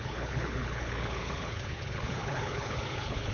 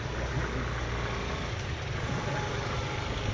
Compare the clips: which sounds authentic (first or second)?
second